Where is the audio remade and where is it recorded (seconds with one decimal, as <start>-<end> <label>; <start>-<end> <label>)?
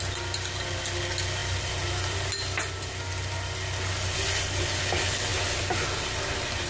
0.0-5.3 recorded; 5.3-6.0 remade; 6.0-6.7 recorded